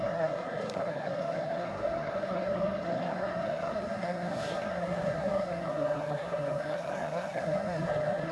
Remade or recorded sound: remade